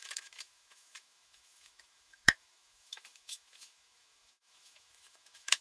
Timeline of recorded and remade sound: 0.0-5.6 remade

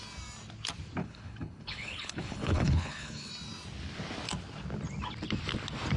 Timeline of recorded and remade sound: 0.0-1.0 recorded; 1.0-3.3 remade; 3.3-6.0 recorded

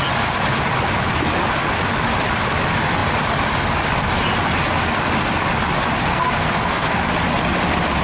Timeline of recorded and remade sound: 0.0-6.1 recorded; 6.1-7.0 remade; 7.0-8.0 recorded

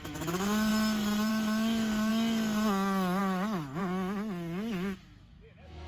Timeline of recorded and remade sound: 0.0-0.7 remade; 0.7-1.3 recorded; 1.3-2.1 remade; 2.1-3.2 recorded; 3.2-3.8 remade; 3.8-5.0 recorded; 5.0-5.9 remade